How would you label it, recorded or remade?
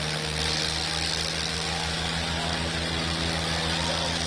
recorded